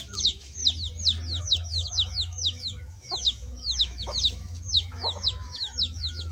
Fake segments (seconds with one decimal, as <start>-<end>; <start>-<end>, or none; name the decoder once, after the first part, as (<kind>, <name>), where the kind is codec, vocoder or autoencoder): 0.0-0.6 (autoencoder, DAC-VAE); 1.4-6.3